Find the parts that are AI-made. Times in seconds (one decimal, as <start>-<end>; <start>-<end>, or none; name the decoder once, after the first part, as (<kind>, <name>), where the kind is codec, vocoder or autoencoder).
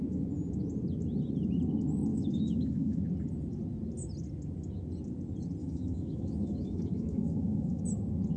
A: 2.1-3.0 (autoencoder, DAC-VAE); 5.6-7.8